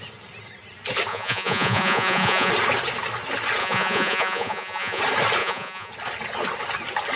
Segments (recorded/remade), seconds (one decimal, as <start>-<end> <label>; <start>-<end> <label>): 0.0-1.1 recorded; 1.1-2.5 remade; 2.5-3.6 recorded; 3.6-5.0 remade; 5.0-5.4 recorded; 5.4-5.9 remade; 5.9-7.2 recorded